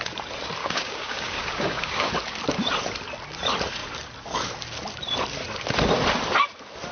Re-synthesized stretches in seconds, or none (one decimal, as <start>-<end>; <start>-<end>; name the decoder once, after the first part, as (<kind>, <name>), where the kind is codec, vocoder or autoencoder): 0.6-2.1 (codec, DAC)